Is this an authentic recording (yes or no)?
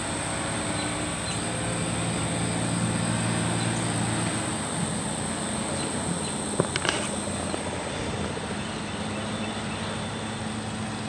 yes